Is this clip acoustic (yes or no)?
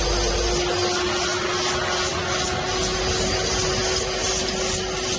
yes